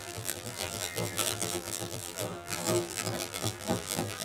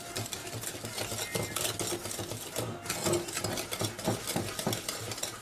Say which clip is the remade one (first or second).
first